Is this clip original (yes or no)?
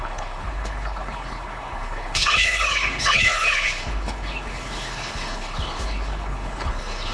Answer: no